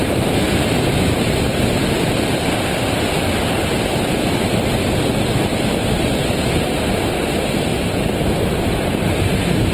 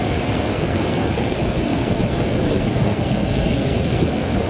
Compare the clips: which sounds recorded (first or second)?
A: first